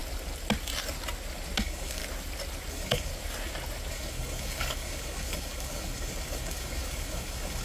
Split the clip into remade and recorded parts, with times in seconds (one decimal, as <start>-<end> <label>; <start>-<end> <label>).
0.0-1.6 recorded; 1.6-2.0 remade; 2.0-2.7 recorded; 2.7-3.1 remade; 3.1-3.9 recorded; 3.9-7.6 remade